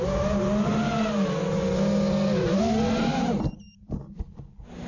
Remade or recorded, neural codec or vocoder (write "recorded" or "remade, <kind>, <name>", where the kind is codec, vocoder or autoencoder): recorded